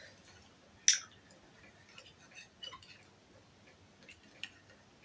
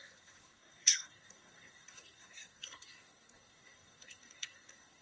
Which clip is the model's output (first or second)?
second